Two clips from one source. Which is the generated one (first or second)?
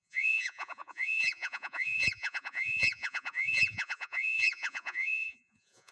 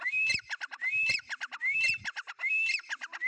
first